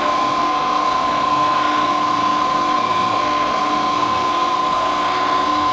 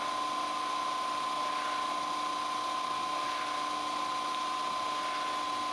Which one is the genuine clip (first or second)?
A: second